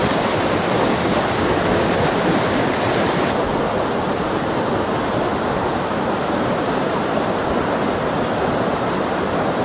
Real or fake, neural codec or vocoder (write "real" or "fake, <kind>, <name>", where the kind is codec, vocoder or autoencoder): real